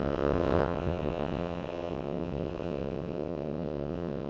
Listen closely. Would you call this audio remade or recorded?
remade